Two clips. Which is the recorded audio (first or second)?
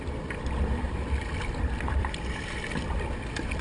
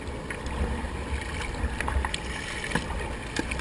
second